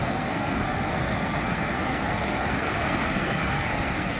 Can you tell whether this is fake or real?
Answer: fake